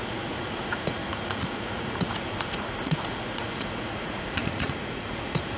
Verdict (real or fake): fake